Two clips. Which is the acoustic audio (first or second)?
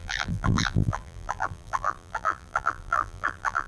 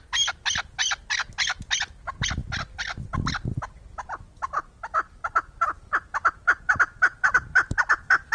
second